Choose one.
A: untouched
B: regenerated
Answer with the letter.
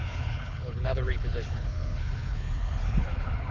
B